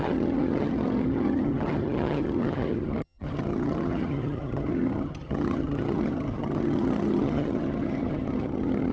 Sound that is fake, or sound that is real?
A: fake